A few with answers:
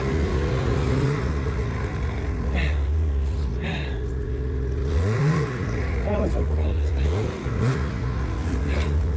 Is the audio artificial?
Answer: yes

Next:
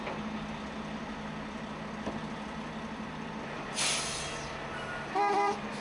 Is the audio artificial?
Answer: no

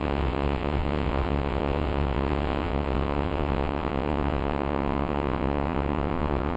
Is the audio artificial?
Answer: yes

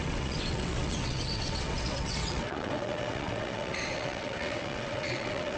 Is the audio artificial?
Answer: yes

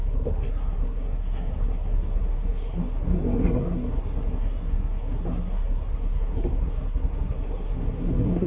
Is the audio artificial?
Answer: yes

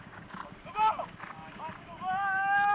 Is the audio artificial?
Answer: yes